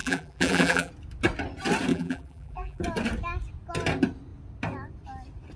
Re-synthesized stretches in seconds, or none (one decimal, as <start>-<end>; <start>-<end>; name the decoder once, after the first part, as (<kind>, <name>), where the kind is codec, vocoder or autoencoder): 0.0-0.9 (vocoder, BigVGAN v2); 1.9-2.8